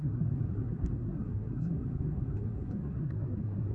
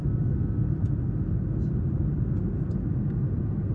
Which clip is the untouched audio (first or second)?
second